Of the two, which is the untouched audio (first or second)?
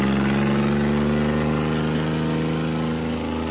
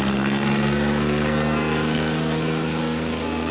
first